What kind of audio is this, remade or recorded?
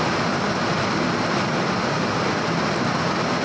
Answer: recorded